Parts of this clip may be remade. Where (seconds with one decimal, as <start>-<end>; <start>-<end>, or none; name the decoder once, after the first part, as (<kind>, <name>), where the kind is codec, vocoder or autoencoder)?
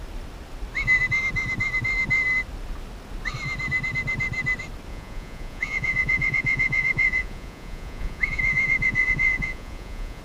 4.9-10.2 (vocoder, Vocos)